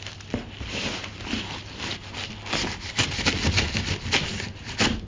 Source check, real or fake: real